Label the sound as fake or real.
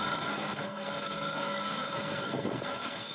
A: fake